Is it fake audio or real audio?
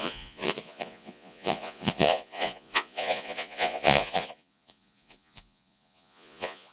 fake